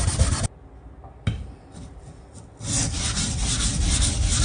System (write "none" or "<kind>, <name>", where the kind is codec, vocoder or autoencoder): none